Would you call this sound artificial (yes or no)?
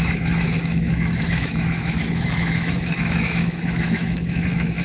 yes